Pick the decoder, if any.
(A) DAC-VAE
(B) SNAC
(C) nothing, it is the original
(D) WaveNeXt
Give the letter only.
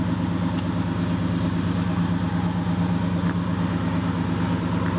C